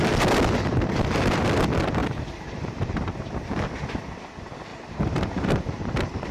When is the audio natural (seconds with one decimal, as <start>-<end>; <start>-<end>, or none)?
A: 0.0-2.0; 3.4-4.7; 5.6-6.3